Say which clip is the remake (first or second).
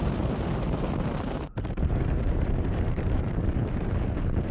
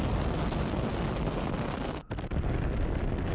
first